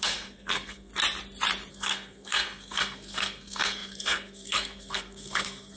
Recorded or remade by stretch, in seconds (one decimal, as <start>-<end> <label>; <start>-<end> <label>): 0.0-0.9 remade; 0.9-1.7 recorded; 1.7-5.8 remade

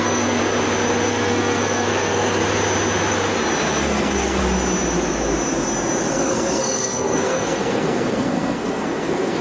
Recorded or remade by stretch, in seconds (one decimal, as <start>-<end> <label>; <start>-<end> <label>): 0.0-0.4 remade; 0.4-1.1 recorded; 1.1-2.4 remade; 2.4-3.7 recorded; 3.7-4.4 remade; 4.4-6.1 recorded; 6.1-9.4 remade

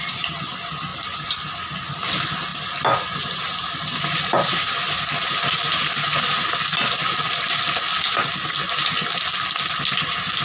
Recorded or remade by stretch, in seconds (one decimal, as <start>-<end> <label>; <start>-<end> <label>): 0.0-10.4 recorded

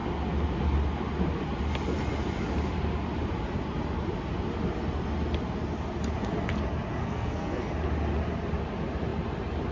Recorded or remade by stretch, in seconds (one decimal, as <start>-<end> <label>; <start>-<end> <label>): 0.0-7.0 recorded; 7.0-7.7 remade; 7.7-9.7 recorded

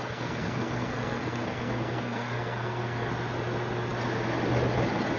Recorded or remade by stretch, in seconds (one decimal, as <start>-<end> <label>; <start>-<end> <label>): 0.0-3.1 remade; 3.1-5.2 recorded

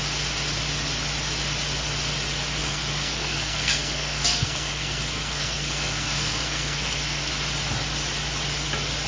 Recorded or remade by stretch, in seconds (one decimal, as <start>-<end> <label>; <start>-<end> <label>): 0.0-2.6 recorded; 2.6-7.3 remade; 7.3-9.1 recorded